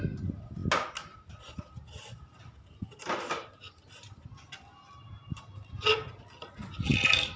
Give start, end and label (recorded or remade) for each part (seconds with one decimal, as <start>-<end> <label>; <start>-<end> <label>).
0.0-7.4 recorded